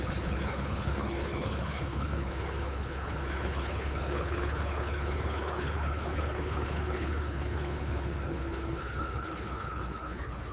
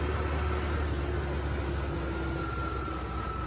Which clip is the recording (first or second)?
second